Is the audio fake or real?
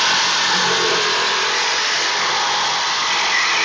real